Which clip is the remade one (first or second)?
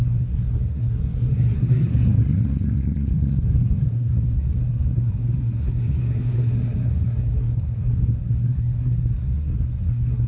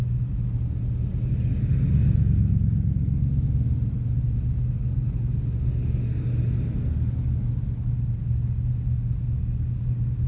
first